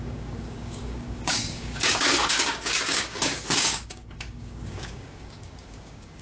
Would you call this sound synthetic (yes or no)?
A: yes